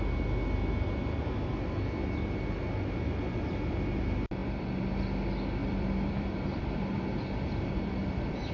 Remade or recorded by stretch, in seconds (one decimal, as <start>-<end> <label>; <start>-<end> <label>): 0.0-4.4 recorded; 4.4-4.9 remade; 4.9-5.6 recorded; 5.6-8.5 remade

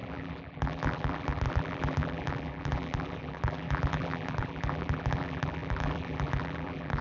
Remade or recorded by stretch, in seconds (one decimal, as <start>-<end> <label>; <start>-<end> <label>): 0.0-7.0 remade